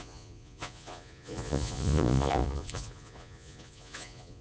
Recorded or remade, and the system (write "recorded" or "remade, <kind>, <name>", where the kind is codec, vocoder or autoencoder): remade, vocoder, Vocos